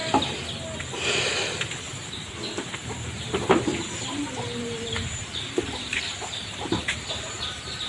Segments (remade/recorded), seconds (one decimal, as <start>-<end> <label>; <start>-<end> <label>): 0.0-3.6 recorded; 3.6-7.9 remade